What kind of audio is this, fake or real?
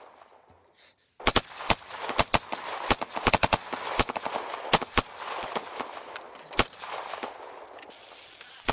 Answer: real